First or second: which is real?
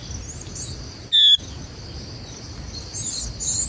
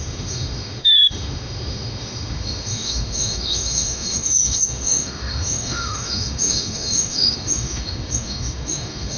first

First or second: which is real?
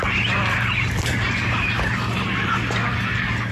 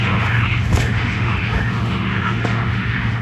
first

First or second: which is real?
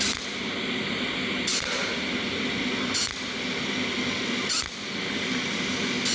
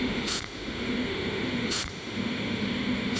first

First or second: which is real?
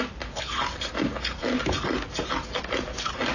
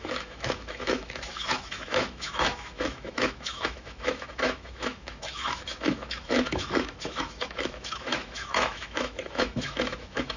first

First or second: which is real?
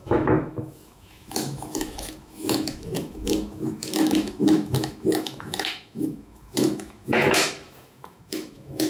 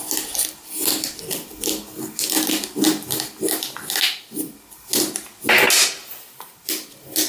second